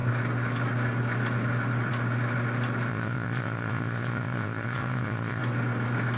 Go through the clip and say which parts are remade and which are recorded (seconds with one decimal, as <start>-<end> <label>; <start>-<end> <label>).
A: 0.0-2.9 recorded; 2.9-5.4 remade; 5.4-6.2 recorded